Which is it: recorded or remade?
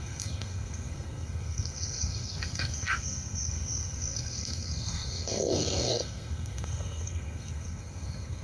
remade